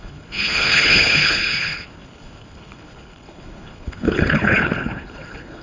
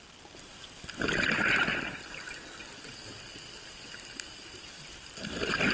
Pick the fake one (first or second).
first